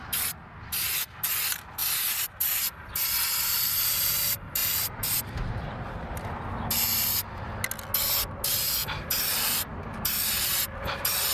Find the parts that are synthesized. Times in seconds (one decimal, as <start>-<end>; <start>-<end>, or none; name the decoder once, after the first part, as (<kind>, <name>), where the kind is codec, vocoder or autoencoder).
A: none